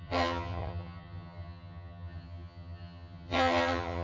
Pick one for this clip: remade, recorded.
remade